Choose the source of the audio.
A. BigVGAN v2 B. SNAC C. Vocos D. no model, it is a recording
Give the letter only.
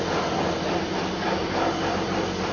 D